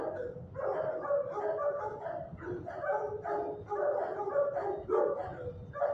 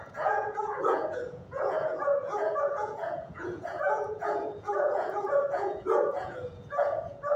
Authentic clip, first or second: first